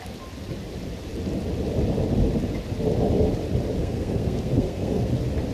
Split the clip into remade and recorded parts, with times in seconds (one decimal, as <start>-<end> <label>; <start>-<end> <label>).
0.0-3.8 recorded; 3.8-5.1 remade; 5.1-5.5 recorded